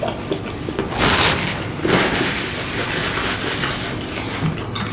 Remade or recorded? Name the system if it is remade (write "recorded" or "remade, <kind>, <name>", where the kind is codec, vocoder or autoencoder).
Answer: recorded